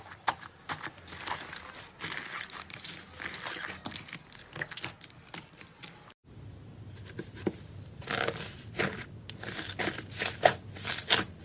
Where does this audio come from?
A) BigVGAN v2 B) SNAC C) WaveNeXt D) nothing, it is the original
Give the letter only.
D